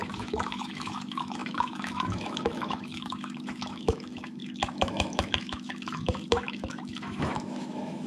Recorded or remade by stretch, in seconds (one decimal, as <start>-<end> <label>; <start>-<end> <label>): 0.0-8.1 remade